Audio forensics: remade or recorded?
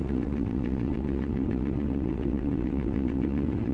remade